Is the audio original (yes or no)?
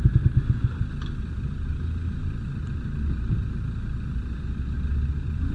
yes